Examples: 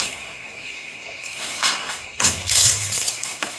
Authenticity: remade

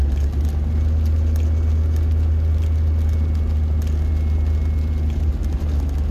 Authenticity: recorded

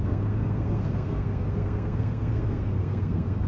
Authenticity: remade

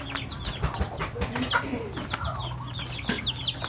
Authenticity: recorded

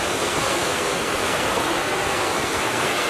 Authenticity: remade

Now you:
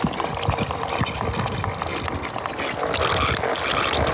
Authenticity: recorded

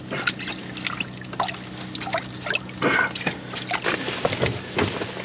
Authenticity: recorded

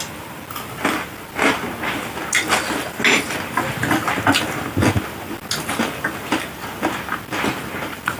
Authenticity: recorded